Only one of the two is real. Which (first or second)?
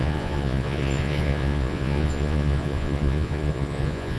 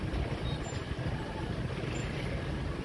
second